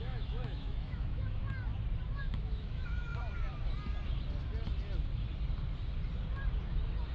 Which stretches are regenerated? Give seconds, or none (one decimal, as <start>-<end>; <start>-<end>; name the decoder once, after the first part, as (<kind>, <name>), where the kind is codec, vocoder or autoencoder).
0.0-1.4 (autoencoder, DAC-VAE); 2.2-3.1